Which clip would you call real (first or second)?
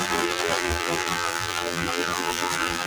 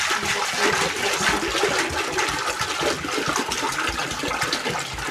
second